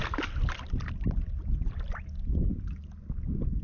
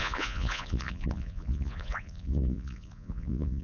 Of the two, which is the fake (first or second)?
second